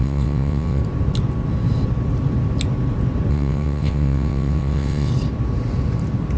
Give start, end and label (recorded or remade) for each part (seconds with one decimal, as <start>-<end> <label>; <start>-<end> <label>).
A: 0.0-0.8 remade; 0.8-3.3 recorded; 3.3-5.1 remade; 5.1-6.4 recorded